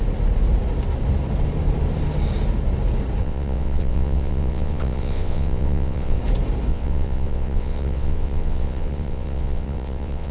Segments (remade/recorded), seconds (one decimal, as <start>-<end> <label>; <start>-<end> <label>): 0.0-3.2 recorded; 3.2-6.2 remade; 6.2-6.7 recorded; 6.7-10.3 remade